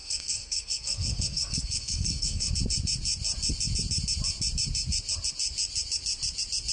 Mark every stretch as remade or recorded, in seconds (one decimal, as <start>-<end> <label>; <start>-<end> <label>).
0.0-2.5 remade; 2.5-6.7 recorded